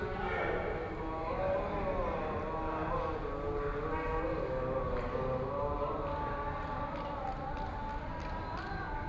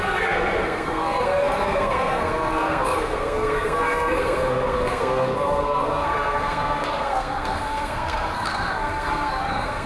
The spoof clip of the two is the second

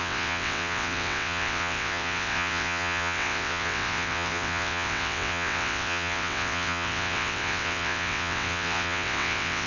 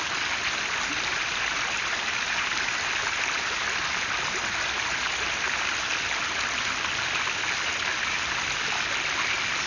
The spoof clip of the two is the first